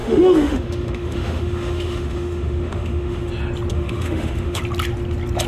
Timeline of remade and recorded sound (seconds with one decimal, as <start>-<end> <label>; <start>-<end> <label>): 0.0-3.3 remade; 3.3-3.7 recorded; 3.7-4.6 remade; 4.6-5.5 recorded